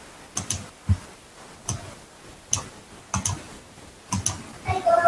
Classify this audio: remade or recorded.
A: recorded